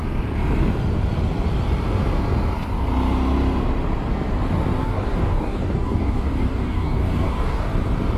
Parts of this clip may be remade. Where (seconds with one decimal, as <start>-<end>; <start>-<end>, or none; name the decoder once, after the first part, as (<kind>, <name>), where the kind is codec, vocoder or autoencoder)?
4.8-7.7 (codec, DAC)